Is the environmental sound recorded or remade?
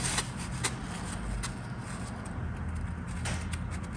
recorded